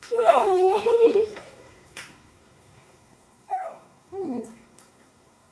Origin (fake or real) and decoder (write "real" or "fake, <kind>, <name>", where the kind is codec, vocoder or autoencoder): fake, codec, SNAC